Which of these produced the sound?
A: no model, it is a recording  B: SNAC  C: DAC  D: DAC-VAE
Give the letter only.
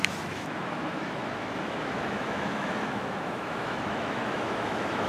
D